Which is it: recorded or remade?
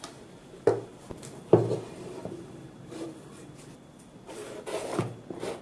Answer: recorded